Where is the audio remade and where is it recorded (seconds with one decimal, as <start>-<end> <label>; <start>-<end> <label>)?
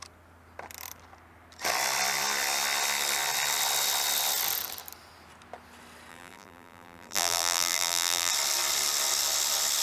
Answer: 0.0-6.1 recorded; 6.1-8.3 remade; 8.3-9.8 recorded